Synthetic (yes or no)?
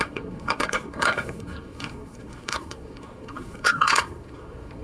yes